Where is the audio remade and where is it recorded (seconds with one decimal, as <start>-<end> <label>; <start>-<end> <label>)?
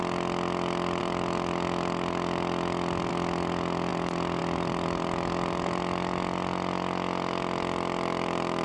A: 0.0-8.6 recorded